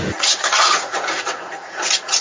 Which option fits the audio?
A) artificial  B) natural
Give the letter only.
A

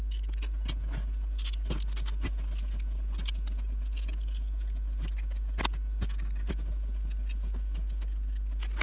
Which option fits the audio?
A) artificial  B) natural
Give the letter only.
B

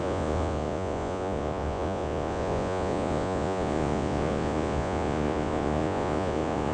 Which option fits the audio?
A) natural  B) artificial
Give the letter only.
B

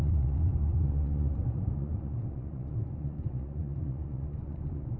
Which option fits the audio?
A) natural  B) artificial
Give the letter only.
B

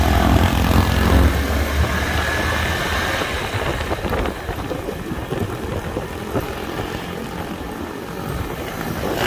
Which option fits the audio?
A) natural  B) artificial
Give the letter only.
A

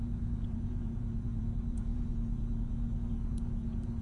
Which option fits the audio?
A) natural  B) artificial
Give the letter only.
B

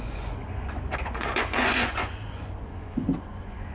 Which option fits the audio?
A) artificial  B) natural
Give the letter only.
A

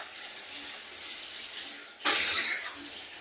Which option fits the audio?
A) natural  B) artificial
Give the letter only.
A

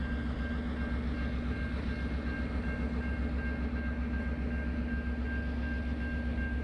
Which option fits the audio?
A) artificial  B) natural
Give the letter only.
B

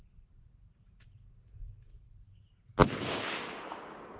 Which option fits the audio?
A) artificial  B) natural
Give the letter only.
B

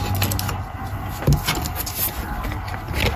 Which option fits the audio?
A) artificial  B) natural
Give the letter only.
B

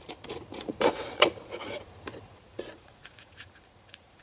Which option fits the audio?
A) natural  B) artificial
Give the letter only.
B